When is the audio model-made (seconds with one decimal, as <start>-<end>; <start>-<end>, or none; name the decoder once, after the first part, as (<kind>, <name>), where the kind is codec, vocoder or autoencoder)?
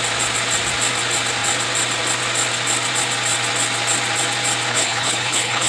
4.7-5.7 (codec, HILCodec)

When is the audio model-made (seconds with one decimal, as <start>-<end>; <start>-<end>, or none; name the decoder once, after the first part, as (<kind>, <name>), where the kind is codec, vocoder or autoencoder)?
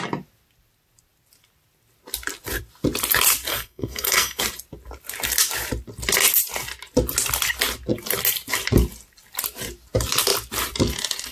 3.5-4.4 (codec, SNAC)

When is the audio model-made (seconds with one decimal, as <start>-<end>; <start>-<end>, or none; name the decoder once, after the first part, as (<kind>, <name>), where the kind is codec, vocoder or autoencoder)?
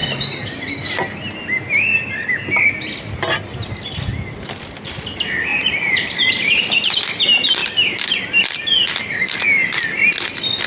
0.0-0.7 (vocoder, BigVGAN v2); 5.5-6.9; 7.6-8.2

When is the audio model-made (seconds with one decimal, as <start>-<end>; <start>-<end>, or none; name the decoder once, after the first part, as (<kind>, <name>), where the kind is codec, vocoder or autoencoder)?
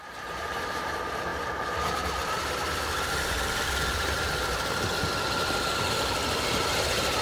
0.0-7.2 (vocoder, BigVGAN v2)